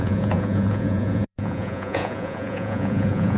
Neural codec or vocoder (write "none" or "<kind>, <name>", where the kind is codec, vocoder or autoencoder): vocoder, Vocos